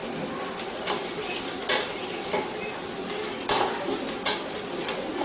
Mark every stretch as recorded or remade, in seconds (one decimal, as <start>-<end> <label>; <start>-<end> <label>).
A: 0.0-5.2 recorded

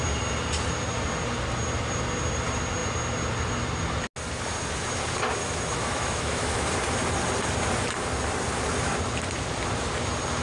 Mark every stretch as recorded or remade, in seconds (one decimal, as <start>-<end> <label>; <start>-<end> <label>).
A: 0.0-5.4 recorded; 5.4-6.7 remade; 6.7-10.4 recorded

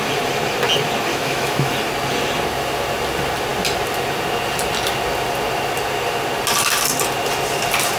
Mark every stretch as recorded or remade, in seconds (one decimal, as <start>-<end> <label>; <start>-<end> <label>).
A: 0.0-1.1 recorded; 1.1-1.7 remade; 1.7-8.0 recorded

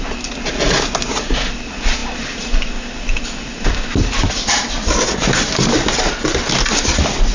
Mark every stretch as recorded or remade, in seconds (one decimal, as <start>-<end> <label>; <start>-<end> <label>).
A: 0.0-7.3 recorded